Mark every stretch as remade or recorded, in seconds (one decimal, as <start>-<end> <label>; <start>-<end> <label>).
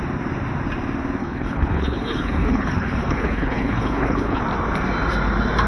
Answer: 0.0-1.2 recorded; 1.2-4.4 remade; 4.4-5.7 recorded